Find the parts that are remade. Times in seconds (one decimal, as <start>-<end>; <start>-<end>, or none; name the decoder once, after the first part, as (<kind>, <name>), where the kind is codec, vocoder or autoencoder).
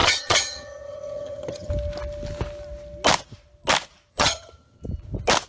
0.0-1.7 (vocoder, HiFi-GAN); 4.1-4.8